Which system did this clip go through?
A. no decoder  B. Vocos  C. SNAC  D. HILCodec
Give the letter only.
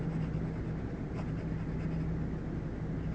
A